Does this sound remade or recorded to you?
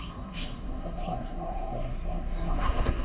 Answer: remade